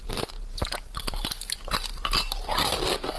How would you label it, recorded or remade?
remade